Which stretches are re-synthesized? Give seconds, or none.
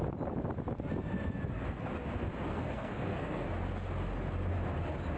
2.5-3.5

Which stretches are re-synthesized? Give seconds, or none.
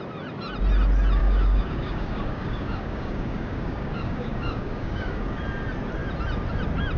1.2-5.4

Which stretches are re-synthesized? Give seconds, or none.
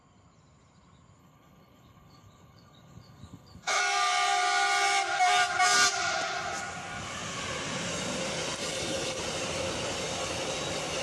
1.2-3.8; 8.6-9.2